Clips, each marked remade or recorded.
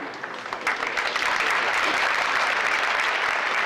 remade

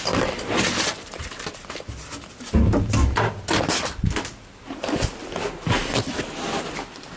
recorded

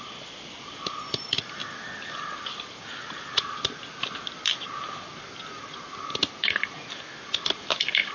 recorded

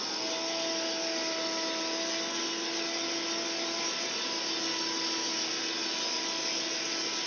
recorded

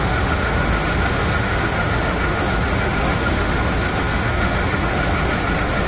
remade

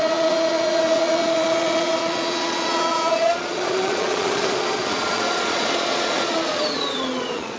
remade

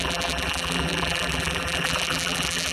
remade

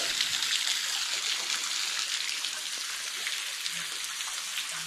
recorded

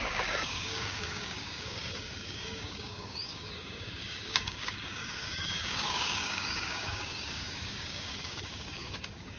remade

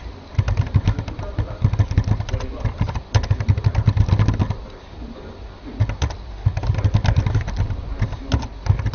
recorded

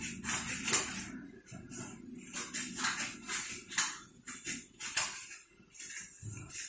recorded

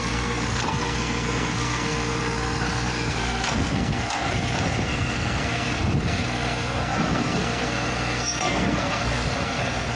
remade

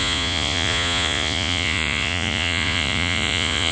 remade